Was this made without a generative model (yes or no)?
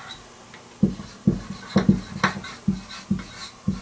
yes